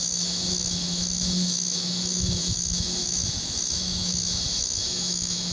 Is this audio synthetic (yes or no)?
yes